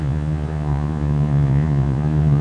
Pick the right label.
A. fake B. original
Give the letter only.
A